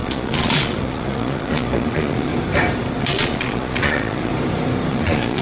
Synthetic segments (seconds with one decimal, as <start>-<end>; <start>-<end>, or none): 0.0-2.3; 3.0-4.3; 4.9-5.4